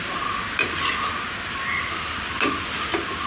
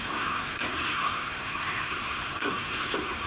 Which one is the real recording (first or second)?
first